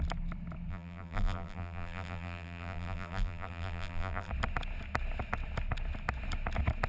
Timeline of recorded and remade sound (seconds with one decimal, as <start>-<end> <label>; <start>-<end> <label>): 0.0-0.7 recorded; 0.7-4.3 remade; 4.3-6.9 recorded